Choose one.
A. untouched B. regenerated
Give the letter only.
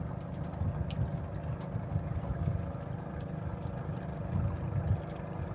A